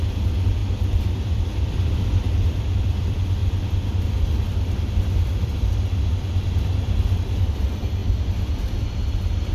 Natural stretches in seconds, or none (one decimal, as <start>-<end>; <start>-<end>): 8.0-8.7